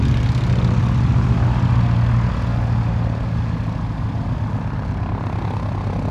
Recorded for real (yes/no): yes